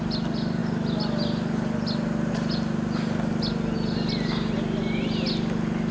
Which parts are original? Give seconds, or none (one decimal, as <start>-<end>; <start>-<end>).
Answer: 0.0-5.9